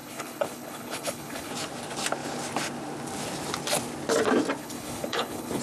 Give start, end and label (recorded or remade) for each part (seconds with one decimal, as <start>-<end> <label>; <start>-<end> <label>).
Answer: 0.0-1.5 remade; 1.5-4.6 recorded; 4.6-5.6 remade